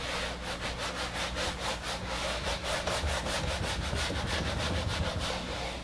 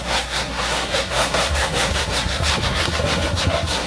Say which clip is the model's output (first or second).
second